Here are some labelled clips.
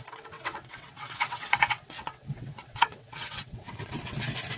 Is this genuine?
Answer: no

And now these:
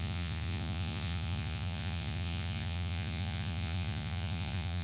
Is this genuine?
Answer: no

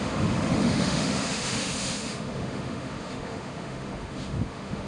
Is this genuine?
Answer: no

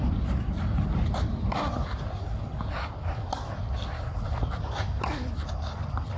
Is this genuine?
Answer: yes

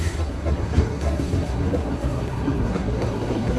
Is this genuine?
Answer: no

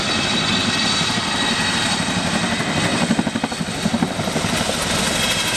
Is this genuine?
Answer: yes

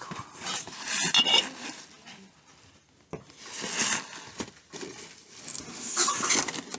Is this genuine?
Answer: yes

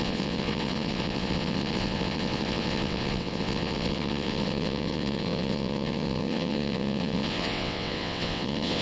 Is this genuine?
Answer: no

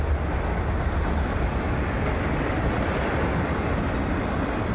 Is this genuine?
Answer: yes